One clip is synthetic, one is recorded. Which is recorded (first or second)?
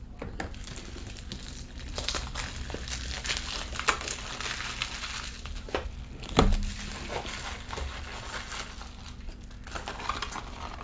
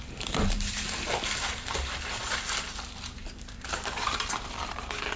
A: first